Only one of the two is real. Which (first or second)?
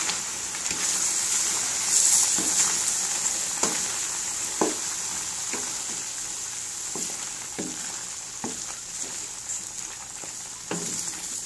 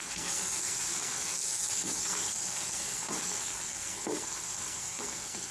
first